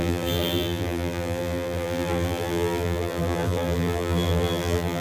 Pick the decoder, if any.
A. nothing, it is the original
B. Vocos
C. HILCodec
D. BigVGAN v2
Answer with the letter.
D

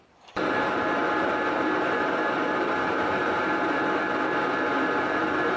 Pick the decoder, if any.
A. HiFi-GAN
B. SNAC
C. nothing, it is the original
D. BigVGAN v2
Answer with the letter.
D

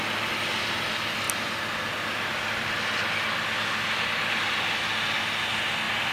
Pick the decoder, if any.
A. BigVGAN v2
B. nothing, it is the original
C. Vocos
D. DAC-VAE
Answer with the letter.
B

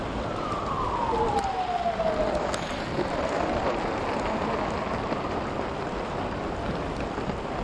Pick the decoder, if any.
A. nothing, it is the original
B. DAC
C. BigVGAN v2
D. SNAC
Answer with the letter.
A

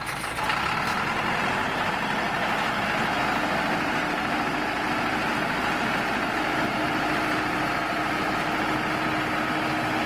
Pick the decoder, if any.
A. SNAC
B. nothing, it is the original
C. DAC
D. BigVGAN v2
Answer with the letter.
B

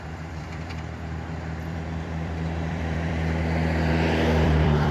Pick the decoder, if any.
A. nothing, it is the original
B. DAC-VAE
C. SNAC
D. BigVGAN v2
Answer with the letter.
D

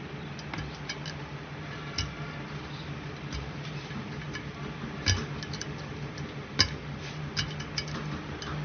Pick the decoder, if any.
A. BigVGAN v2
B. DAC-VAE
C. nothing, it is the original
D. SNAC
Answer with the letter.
C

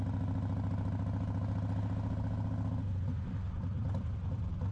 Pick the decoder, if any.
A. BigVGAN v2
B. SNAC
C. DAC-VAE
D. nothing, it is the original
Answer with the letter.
D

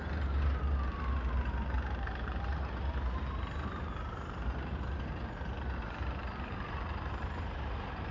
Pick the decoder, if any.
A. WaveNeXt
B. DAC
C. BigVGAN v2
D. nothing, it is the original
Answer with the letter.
C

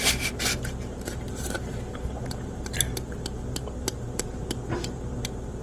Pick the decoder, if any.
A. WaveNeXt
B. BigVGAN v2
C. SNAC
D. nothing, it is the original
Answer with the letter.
B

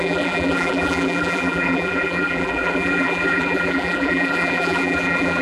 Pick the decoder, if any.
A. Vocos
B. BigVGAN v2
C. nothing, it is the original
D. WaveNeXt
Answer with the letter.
B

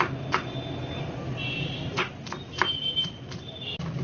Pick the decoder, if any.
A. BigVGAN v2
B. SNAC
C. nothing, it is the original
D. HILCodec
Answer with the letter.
C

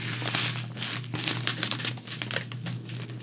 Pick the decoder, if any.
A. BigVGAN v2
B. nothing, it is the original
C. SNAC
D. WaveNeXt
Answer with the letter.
B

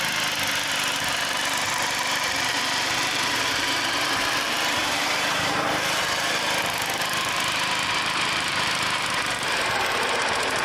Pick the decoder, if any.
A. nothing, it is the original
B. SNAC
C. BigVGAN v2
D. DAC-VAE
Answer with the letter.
C